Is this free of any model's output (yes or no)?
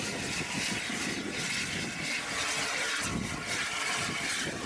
yes